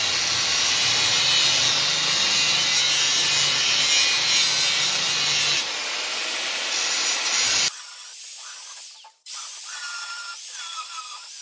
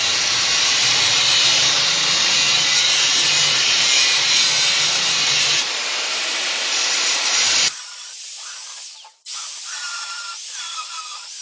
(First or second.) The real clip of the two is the first